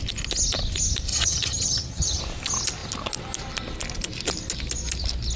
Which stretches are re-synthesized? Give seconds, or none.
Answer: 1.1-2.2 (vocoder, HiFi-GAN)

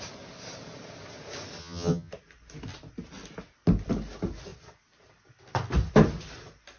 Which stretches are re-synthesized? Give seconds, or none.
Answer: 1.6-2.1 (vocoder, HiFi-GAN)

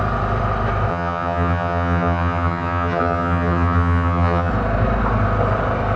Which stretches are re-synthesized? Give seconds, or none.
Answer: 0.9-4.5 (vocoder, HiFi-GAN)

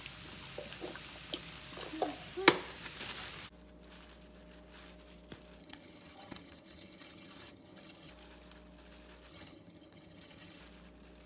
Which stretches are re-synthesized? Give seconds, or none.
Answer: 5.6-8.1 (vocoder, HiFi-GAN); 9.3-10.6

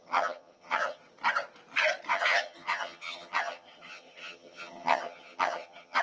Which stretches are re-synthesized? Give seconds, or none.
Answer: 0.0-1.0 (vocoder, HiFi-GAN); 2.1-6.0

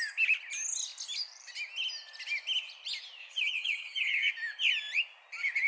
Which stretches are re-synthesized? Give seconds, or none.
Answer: 3.2-4.3 (vocoder, HiFi-GAN)

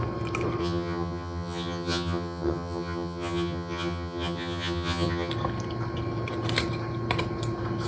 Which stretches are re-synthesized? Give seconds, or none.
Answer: 0.6-5.3 (vocoder, HiFi-GAN)

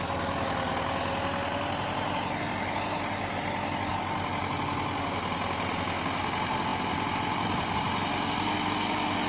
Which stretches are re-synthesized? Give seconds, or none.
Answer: none